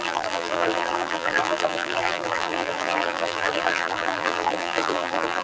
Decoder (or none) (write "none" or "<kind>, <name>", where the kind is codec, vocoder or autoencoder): vocoder, BigVGAN v2